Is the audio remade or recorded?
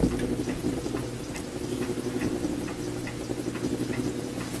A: recorded